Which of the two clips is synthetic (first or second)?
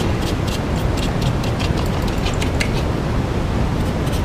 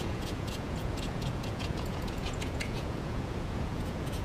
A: second